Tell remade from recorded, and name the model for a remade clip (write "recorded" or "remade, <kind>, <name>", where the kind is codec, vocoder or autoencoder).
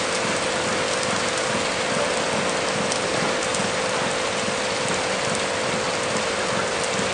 recorded